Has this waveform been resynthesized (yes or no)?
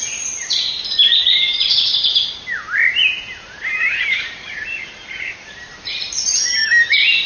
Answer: yes